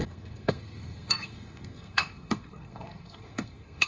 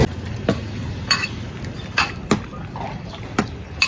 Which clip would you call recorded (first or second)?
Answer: second